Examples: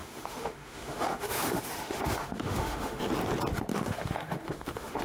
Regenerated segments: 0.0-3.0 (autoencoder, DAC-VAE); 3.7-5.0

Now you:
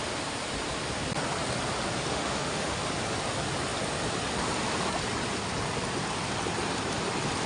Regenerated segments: 2.1-2.8 (autoencoder, DAC-VAE)

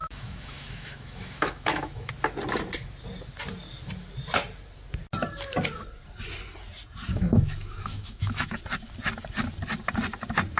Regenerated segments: 0.0-2.1 (autoencoder, DAC-VAE); 7.1-8.6

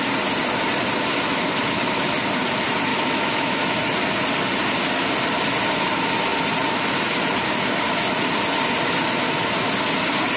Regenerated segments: 2.9-3.8 (autoencoder, DAC-VAE)

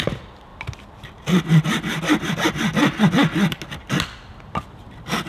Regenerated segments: none

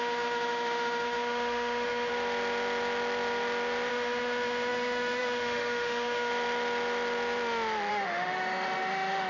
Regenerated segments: 0.0-2.1 (autoencoder, DAC-VAE); 3.9-6.3; 7.9-9.3

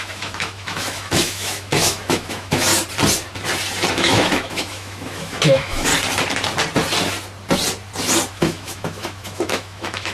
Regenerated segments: 0.0-2.7 (autoencoder, DAC-VAE); 3.9-5.9; 8.3-10.1

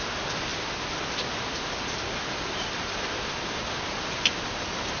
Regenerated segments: none